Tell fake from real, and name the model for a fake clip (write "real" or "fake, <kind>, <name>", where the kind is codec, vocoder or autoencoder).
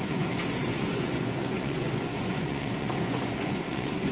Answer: fake, vocoder, Vocos